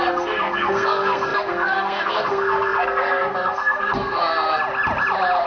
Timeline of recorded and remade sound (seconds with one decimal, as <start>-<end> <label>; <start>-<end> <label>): 0.0-4.2 remade; 4.2-5.5 recorded